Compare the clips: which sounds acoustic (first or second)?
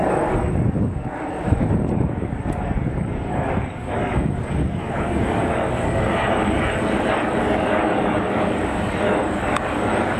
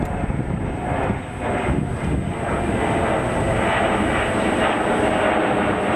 second